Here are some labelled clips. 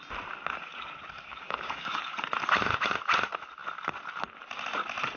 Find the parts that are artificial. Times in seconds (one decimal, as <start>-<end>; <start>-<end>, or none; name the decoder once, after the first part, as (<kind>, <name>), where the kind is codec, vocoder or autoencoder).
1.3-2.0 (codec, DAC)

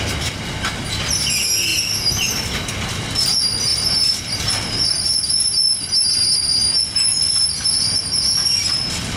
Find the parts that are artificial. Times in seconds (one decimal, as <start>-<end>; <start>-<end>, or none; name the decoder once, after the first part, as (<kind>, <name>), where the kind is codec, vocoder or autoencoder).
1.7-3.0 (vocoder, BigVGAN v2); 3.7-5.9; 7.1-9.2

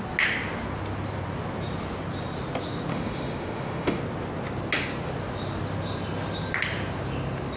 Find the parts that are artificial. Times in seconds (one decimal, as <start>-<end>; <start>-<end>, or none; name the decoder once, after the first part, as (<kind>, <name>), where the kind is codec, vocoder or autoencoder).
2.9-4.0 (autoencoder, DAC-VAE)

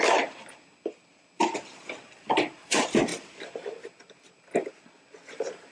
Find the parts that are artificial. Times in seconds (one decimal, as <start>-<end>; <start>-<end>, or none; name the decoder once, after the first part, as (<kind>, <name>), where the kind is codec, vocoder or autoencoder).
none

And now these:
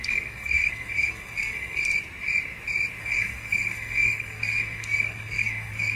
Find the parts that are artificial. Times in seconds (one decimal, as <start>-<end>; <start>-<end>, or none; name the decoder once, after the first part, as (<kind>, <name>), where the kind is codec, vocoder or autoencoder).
0.0-1.8 (codec, SNAC); 3.0-6.0

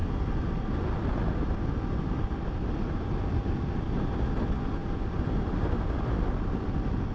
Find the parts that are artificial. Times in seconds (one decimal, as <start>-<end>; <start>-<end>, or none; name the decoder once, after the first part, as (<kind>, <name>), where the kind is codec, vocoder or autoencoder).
none

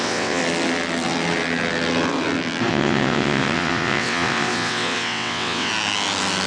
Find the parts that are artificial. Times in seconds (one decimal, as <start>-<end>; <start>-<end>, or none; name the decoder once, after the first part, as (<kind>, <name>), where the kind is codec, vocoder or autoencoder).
0.0-0.4 (vocoder, WaveNeXt); 2.7-5.7

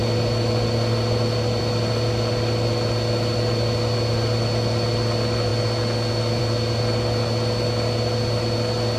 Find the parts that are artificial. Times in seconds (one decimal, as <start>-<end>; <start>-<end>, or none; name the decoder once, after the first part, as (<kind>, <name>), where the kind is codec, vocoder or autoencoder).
none